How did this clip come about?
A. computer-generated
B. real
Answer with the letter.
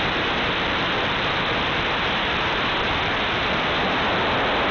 B